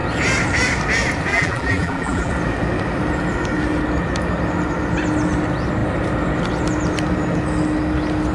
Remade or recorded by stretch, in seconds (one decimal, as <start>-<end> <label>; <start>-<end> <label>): 0.0-1.3 recorded; 1.3-2.3 remade; 2.3-8.3 recorded